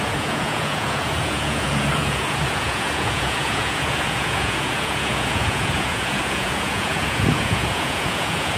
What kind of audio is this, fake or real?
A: fake